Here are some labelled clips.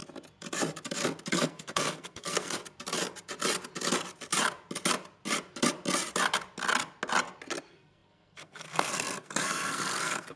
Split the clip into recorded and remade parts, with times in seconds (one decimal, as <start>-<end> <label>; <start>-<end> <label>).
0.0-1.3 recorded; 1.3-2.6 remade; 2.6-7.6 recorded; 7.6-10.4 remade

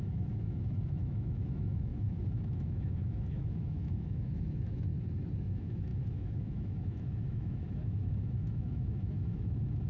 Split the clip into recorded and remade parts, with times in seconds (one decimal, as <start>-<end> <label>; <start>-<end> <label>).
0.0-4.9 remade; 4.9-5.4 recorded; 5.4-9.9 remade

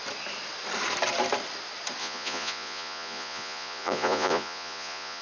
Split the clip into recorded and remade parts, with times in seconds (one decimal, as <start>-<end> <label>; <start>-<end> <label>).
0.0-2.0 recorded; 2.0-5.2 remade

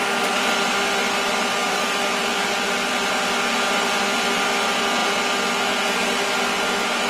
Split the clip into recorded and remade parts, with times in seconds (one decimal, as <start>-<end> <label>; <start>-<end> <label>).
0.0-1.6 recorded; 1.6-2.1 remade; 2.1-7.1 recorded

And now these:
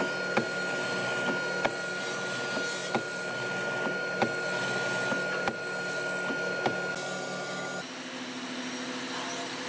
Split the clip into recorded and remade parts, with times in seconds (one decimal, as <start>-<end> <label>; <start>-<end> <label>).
0.0-9.7 recorded